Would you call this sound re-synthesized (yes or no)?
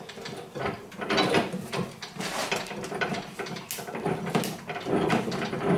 no